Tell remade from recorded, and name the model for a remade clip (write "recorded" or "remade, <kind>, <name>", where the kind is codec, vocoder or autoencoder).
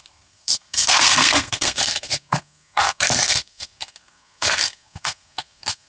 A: remade, codec, SNAC